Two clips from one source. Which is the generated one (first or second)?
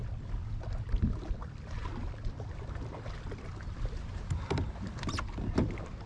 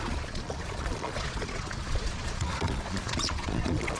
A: second